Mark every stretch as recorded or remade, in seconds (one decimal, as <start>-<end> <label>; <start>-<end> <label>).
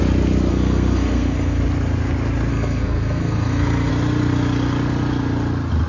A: 0.0-0.5 recorded; 0.5-1.6 remade; 1.6-2.5 recorded; 2.5-3.9 remade; 3.9-5.9 recorded